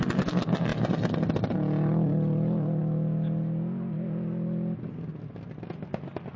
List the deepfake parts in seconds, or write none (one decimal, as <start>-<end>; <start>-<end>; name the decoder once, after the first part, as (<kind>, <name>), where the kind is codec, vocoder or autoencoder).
none